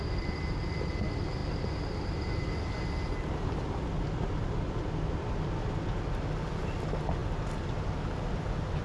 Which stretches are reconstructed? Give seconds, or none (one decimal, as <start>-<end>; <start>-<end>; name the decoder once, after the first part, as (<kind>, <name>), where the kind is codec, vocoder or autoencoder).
none